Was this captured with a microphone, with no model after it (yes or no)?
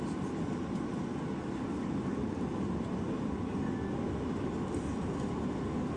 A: yes